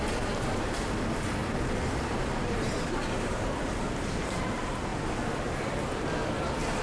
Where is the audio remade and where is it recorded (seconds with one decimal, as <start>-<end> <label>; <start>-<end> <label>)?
0.0-1.4 recorded; 1.4-3.0 remade; 3.0-6.8 recorded